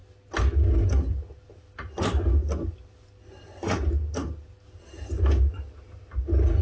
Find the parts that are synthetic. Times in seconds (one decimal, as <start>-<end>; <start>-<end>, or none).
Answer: none

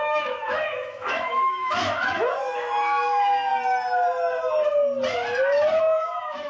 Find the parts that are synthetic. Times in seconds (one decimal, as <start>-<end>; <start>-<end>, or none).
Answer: 0.0-3.5; 5.8-6.5

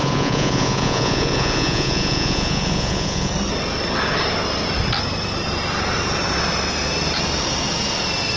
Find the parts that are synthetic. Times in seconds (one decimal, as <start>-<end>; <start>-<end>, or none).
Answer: 0.0-3.3

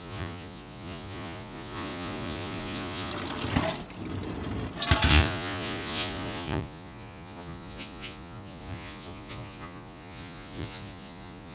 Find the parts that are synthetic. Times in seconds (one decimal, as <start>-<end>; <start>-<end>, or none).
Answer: 0.0-3.1; 5.1-11.5

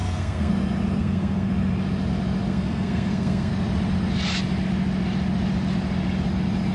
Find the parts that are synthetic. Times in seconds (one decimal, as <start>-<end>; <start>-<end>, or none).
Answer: 0.0-0.5; 1.0-1.5; 2.5-3.5

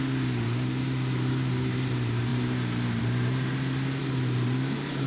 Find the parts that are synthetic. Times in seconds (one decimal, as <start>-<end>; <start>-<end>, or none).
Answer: none